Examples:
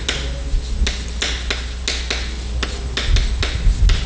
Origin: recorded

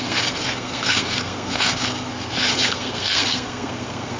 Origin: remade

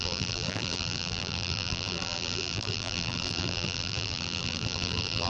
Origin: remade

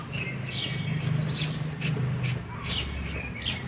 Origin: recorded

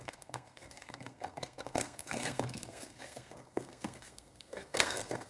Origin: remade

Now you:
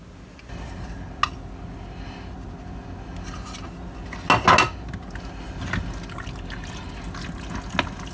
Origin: recorded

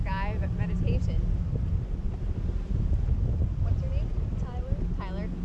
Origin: recorded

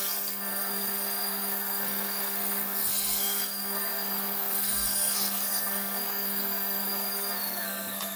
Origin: remade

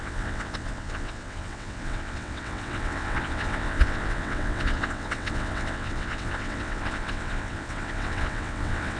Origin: remade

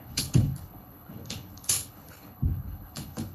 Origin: remade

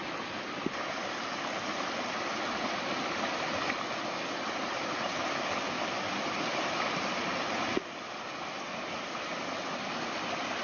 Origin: recorded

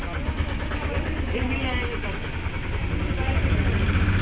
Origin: recorded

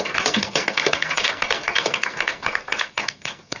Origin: remade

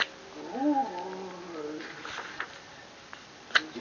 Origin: recorded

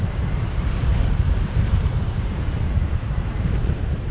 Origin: remade